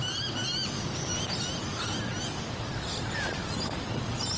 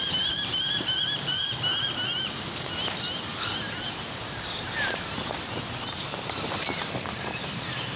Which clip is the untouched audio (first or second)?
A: first